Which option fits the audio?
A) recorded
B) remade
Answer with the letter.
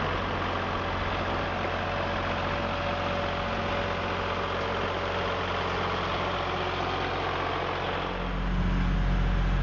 A